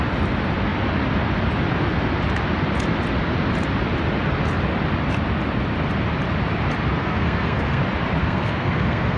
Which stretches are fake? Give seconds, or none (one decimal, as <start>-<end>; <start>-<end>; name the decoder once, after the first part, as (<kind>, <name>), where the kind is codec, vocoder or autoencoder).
7.0-7.8 (codec, SNAC); 8.2-9.2